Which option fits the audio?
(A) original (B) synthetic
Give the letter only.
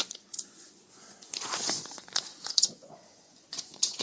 B